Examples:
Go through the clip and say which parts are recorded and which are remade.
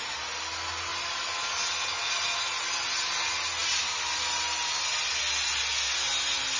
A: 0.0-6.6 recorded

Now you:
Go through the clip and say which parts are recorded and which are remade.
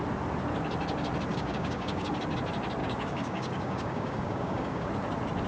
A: 0.0-1.3 recorded; 1.3-2.1 remade; 2.1-2.8 recorded; 2.8-4.9 remade; 4.9-5.5 recorded